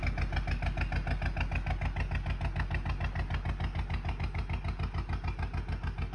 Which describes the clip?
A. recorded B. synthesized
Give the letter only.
A